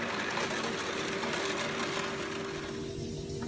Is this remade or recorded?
recorded